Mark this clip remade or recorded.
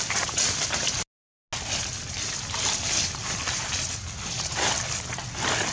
recorded